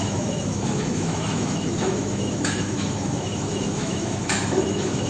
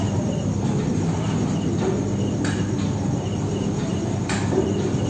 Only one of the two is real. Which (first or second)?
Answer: second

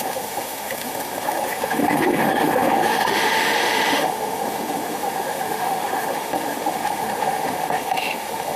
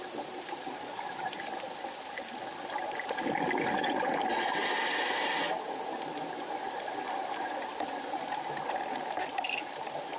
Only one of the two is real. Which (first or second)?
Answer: second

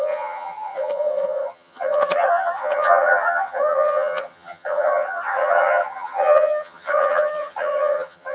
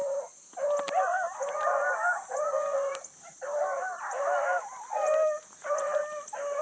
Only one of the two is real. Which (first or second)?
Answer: second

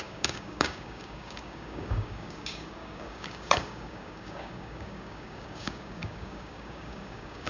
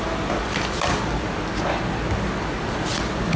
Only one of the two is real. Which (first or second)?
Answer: second